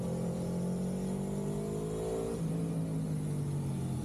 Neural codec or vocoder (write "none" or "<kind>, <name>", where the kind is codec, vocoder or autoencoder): none